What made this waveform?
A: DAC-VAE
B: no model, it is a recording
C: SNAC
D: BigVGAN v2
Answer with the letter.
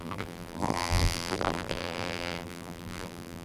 D